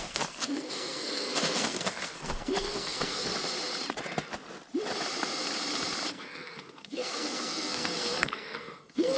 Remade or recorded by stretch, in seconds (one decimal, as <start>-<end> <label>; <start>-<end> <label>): 0.0-3.3 remade; 3.3-6.1 recorded; 6.1-9.2 remade